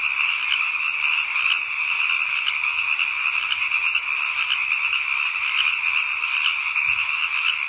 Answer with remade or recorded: recorded